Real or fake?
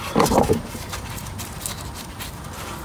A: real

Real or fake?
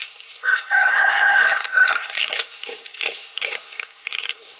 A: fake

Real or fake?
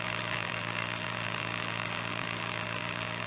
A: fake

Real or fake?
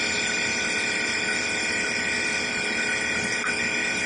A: real